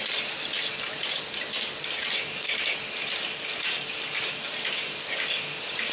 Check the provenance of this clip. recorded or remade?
recorded